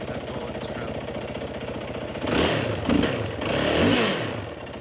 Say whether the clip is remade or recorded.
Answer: recorded